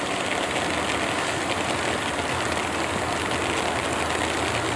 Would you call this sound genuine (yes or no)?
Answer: yes